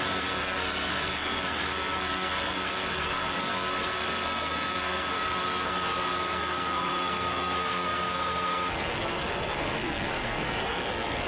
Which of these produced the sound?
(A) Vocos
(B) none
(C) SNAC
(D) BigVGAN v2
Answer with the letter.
C